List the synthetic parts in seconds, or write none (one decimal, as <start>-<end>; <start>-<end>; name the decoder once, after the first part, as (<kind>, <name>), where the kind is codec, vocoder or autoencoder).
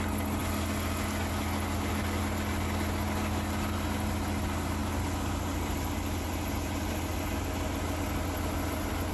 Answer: none